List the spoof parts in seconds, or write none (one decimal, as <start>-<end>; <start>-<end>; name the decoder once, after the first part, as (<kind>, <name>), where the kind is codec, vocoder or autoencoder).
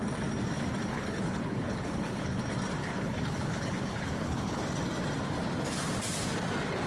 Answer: 0.9-2.4 (codec, HILCodec); 2.8-4.6